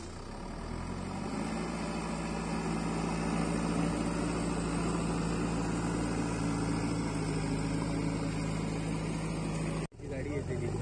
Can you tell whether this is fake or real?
real